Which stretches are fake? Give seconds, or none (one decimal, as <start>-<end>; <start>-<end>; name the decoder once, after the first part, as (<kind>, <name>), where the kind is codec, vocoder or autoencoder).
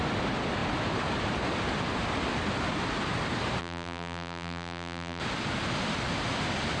3.6-5.2 (vocoder, BigVGAN v2)